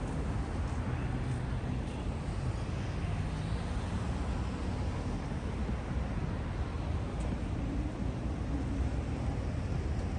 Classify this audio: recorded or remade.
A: recorded